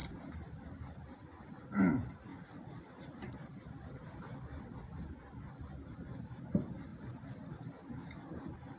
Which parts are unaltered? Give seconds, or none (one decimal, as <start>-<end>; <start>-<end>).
0.0-2.3; 3.2-8.8